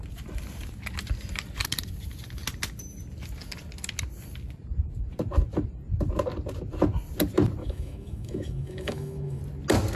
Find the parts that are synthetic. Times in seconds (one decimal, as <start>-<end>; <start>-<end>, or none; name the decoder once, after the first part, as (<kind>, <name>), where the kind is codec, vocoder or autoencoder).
7.6-9.4 (autoencoder, DAC-VAE)